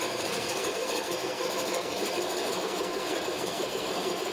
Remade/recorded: remade